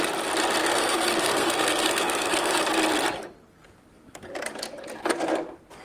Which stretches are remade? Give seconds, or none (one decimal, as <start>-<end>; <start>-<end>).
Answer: 0.6-2.7